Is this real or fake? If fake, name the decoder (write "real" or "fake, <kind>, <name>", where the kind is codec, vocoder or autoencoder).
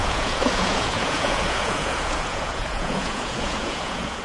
fake, vocoder, Vocos